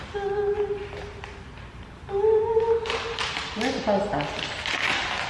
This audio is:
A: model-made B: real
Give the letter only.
B